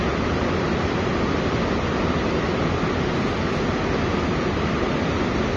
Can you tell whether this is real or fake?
real